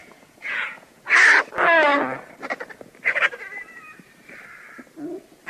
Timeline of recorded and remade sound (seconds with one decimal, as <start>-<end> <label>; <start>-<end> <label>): 0.0-1.0 remade; 1.0-5.5 recorded